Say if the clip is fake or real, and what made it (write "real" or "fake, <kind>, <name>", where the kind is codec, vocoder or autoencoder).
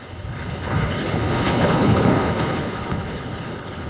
fake, codec, HILCodec